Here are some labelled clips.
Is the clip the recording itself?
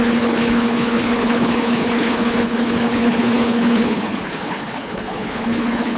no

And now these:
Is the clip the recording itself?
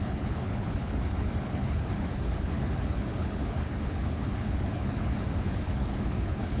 no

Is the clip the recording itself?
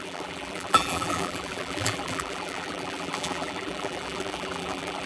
no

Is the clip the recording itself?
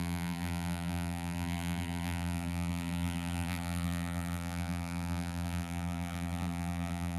no